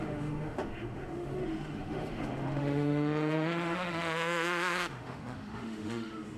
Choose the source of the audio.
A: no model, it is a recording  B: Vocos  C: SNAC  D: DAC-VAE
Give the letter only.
D